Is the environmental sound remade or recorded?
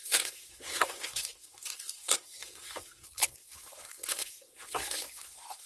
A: remade